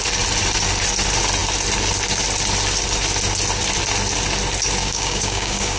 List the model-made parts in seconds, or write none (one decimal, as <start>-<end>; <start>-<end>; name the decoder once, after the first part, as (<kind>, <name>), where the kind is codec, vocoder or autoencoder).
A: 4.8-5.8 (codec, DAC)